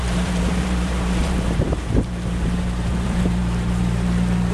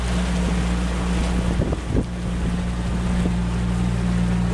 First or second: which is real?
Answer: second